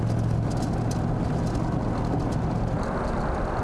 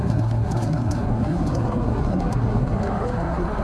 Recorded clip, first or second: first